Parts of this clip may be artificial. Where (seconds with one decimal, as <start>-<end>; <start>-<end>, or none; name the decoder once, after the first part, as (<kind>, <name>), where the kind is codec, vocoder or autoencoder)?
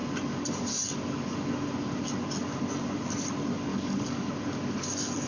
3.7-4.3 (codec, DAC)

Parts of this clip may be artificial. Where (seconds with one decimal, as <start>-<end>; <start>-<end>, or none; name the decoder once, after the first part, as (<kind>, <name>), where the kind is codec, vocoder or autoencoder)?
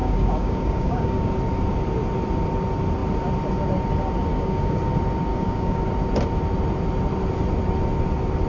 0.0-1.3 (codec, DAC); 4.3-4.8; 5.3-5.8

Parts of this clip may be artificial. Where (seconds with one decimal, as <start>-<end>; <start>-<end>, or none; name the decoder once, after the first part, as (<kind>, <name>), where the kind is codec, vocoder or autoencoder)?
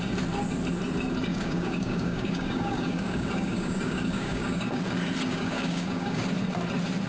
1.3-4.8 (codec, DAC); 5.3-6.2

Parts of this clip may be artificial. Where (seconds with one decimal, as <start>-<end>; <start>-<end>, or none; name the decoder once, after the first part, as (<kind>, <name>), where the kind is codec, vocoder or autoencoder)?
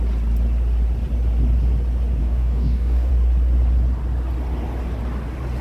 2.2-3.1 (codec, DAC)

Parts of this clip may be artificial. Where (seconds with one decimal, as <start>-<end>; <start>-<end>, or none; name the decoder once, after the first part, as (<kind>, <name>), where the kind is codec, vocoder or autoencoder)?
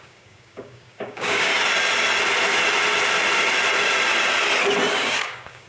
0.0-1.5 (codec, DAC); 4.9-5.7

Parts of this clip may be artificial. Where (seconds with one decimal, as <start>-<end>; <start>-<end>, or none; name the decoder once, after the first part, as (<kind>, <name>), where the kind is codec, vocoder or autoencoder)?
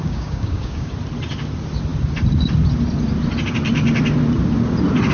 0.0-0.9 (codec, DAC)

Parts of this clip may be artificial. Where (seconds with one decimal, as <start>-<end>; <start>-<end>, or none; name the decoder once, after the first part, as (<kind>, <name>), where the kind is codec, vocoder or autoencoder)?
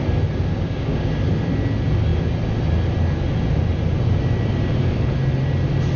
0.5-1.1 (codec, DAC)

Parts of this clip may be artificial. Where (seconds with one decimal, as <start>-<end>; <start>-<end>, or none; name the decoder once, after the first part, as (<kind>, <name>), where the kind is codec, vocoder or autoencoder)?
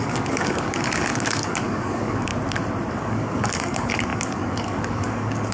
0.0-2.3 (codec, DAC); 2.9-5.5